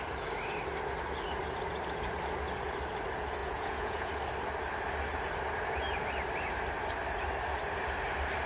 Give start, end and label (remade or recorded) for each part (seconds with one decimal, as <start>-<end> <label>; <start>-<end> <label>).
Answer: 0.0-3.4 recorded; 3.4-4.1 remade; 4.1-8.5 recorded